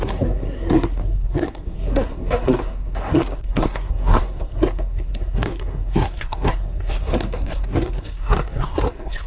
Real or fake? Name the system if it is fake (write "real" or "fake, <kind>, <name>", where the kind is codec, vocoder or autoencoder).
fake, codec, SNAC